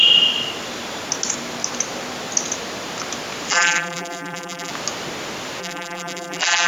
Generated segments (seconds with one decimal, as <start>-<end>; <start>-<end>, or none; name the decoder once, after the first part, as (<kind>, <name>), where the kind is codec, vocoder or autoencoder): 3.5-4.7 (vocoder, BigVGAN v2); 5.6-6.7